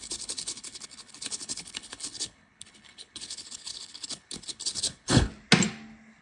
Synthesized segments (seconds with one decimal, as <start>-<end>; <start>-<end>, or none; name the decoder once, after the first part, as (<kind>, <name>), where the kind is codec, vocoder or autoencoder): 0.0-5.3 (codec, HILCodec)